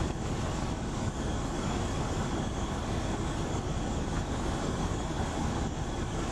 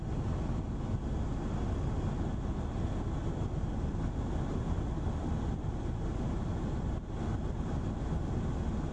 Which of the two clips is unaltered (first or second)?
second